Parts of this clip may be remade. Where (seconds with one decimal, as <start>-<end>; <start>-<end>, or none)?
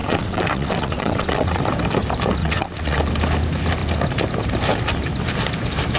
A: 0.0-1.6; 2.4-3.0